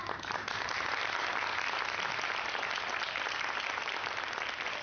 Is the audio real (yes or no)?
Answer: yes